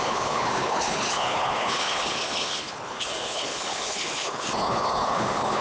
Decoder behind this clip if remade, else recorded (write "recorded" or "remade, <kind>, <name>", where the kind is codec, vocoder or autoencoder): remade, codec, HILCodec